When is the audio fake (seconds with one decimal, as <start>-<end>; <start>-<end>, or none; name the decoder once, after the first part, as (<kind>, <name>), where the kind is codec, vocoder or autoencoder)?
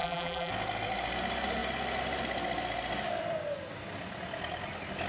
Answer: 0.0-0.5 (vocoder, BigVGAN v2)